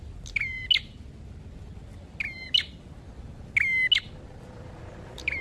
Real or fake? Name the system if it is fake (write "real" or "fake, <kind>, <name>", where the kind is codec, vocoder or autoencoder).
real